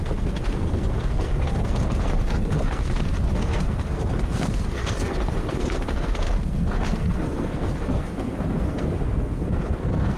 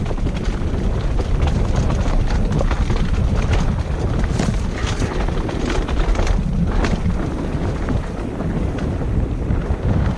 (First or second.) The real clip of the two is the second